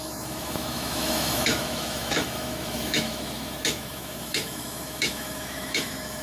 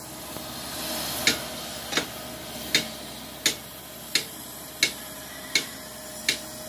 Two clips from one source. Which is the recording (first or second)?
second